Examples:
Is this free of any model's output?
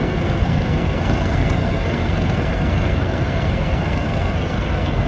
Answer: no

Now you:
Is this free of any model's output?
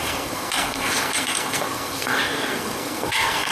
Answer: no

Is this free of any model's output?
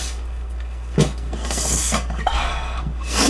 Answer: no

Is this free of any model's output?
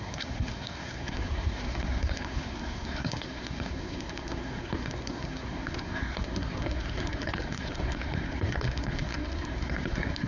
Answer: no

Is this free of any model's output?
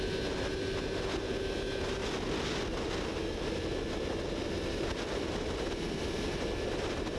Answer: yes